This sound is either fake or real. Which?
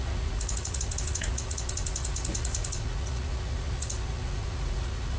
fake